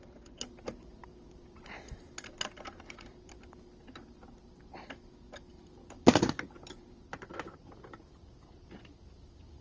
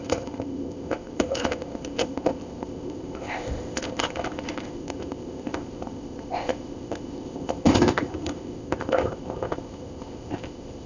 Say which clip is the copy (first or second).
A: second